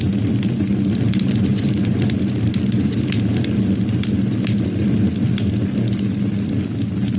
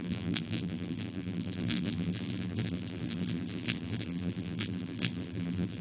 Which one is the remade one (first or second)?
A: second